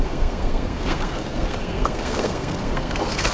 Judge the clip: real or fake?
fake